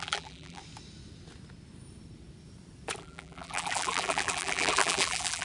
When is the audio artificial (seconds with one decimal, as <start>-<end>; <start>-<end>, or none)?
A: 0.0-0.6; 3.0-5.4